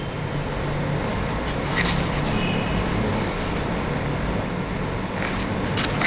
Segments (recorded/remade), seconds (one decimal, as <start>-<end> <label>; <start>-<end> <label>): 0.0-3.1 recorded; 3.1-4.0 remade; 4.0-6.1 recorded

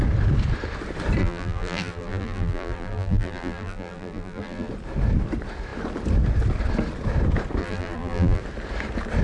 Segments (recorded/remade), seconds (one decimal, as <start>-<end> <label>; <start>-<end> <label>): 0.0-1.2 recorded; 1.2-4.7 remade; 4.7-7.6 recorded; 7.6-8.4 remade; 8.4-9.2 recorded

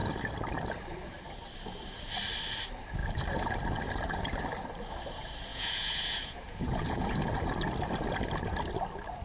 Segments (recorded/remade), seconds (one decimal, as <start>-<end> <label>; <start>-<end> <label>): 0.0-5.5 recorded; 5.5-7.3 remade; 7.3-9.2 recorded

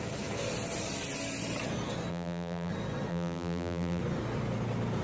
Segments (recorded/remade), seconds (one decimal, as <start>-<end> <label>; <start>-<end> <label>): 0.0-2.1 recorded; 2.1-2.7 remade; 2.7-3.1 recorded; 3.1-4.0 remade; 4.0-5.0 recorded

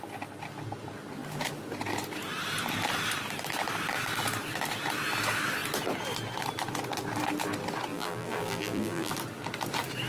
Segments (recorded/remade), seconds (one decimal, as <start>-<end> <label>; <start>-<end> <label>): 0.0-7.9 recorded; 7.9-9.1 remade; 9.1-10.1 recorded

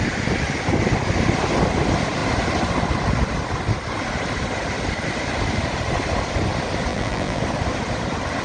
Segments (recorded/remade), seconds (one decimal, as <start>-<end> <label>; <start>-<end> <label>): 0.0-6.9 recorded; 6.9-7.4 remade; 7.4-8.4 recorded